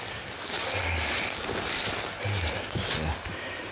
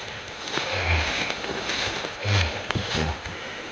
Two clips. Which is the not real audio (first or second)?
second